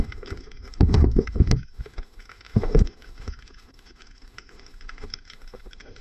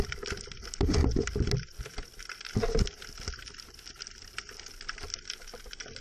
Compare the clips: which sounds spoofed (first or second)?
first